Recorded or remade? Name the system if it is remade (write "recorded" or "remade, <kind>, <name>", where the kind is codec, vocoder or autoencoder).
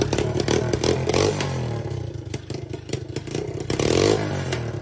recorded